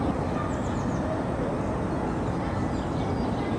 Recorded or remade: recorded